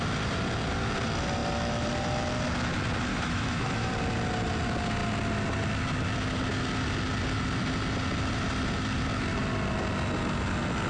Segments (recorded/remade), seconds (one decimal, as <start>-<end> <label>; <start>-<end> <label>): 0.0-3.1 recorded; 3.1-3.9 remade; 3.9-10.9 recorded